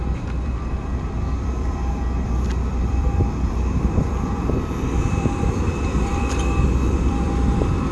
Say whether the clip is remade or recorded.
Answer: remade